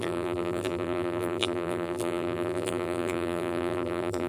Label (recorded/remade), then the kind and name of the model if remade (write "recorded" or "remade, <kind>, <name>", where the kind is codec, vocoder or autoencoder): remade, vocoder, BigVGAN v2